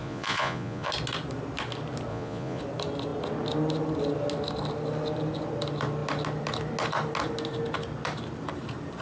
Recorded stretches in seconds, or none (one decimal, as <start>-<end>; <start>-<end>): 0.9-2.1; 2.6-9.0